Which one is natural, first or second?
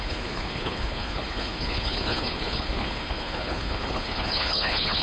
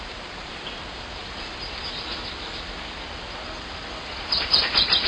second